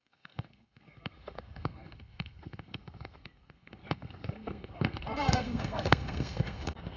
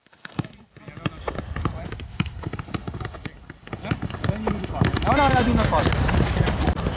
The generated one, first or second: first